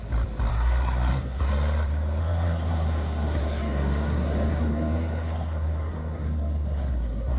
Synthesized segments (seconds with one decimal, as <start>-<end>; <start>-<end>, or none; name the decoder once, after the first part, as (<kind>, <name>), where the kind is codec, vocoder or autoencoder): 0.5-1.5 (codec, SNAC); 2.2-7.4